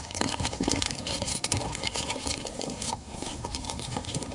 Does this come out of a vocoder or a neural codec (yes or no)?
yes